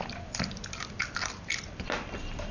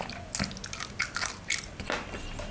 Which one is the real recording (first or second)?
second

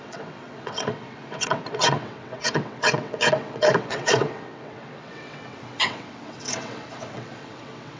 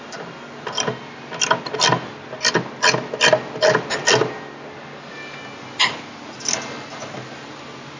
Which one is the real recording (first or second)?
second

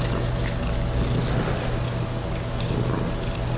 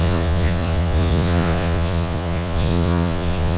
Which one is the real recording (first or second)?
first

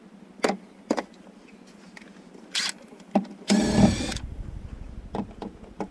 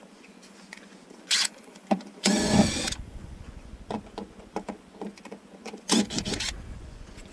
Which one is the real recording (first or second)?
first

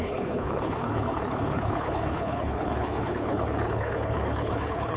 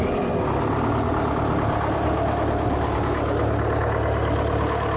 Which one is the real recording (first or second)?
second